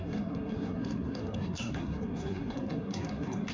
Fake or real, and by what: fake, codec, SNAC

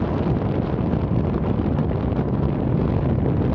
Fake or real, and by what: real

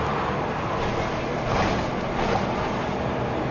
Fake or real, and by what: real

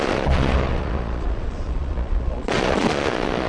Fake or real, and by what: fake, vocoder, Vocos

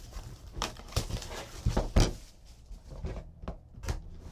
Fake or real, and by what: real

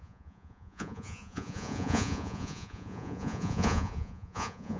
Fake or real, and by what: fake, vocoder, Vocos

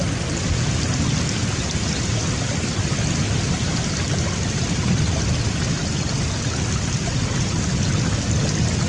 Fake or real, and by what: real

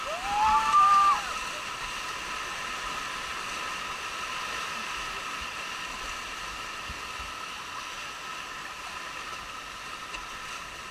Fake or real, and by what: real